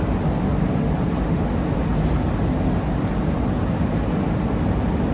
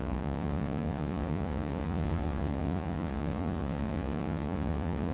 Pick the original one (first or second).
first